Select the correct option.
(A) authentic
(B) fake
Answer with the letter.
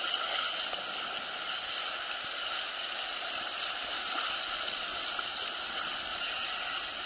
A